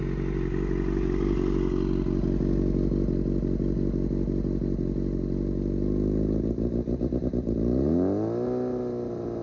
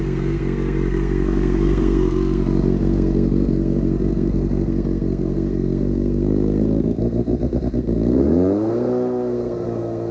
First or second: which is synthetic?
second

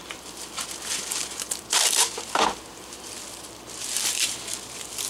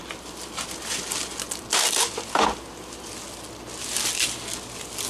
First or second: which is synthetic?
first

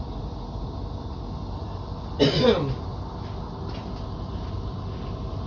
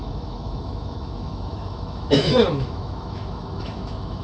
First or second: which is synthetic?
second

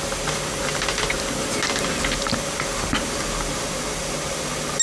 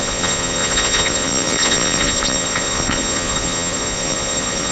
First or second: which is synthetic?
second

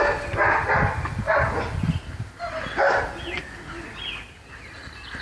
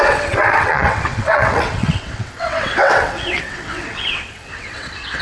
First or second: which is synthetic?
second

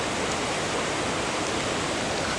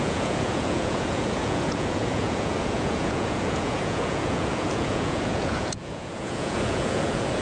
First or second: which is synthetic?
second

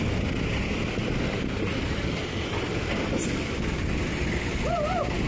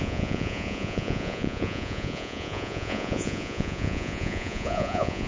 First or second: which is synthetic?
second